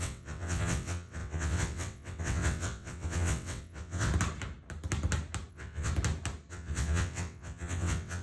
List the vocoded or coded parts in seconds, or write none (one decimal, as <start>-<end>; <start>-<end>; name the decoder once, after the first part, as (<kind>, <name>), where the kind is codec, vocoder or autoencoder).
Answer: 0.0-4.1 (vocoder, WaveNeXt); 5.5-5.9; 6.5-8.2